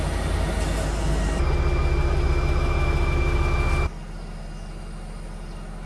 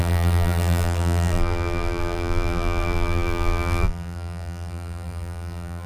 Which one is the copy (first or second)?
second